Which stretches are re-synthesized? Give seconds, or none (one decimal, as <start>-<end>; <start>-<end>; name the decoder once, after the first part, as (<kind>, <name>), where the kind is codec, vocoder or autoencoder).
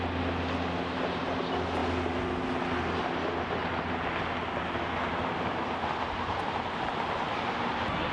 none